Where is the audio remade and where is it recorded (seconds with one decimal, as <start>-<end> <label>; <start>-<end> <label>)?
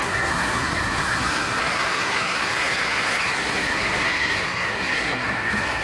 0.0-5.8 remade